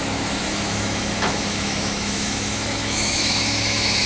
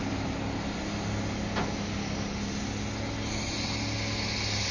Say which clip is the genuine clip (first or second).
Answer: second